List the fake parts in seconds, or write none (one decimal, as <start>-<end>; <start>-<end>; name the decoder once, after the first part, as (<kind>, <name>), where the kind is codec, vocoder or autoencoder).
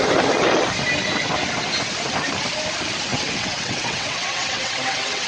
3.1-5.3 (vocoder, WaveNeXt)